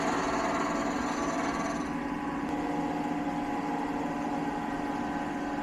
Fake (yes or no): no